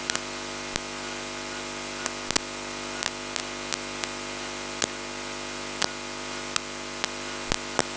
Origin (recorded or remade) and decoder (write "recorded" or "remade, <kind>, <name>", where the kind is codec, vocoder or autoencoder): recorded